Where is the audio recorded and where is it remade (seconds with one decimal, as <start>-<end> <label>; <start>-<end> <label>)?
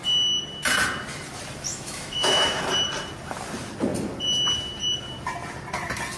0.0-1.7 recorded; 1.7-2.6 remade; 2.6-6.2 recorded